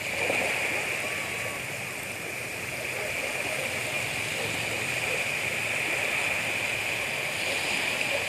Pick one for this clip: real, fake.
real